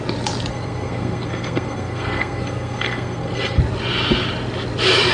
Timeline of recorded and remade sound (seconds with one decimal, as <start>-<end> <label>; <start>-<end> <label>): 0.0-0.5 recorded; 0.5-3.6 remade; 3.6-5.1 recorded